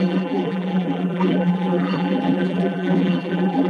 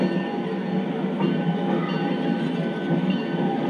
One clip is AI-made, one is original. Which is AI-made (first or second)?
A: first